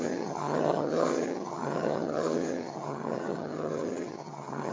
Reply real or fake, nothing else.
fake